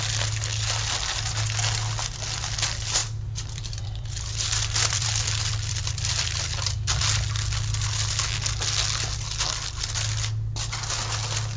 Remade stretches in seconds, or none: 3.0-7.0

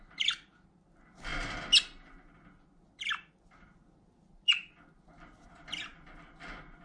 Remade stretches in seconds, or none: none

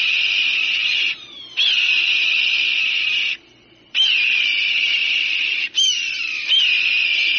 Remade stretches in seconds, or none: 0.0-7.4

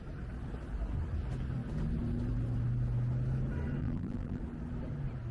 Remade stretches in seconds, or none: 3.8-4.4

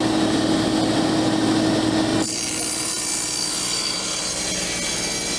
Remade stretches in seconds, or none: 2.1-5.4

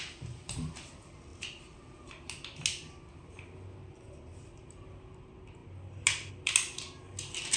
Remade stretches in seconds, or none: none

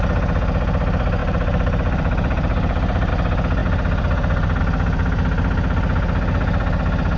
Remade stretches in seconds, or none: 1.2-3.1